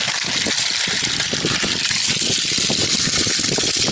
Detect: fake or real real